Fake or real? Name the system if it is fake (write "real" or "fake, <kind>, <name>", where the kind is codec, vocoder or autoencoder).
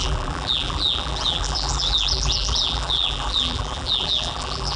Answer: fake, vocoder, BigVGAN v2